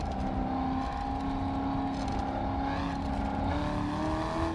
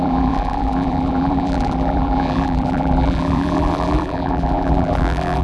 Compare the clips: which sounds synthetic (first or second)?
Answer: second